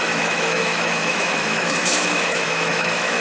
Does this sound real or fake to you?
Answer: fake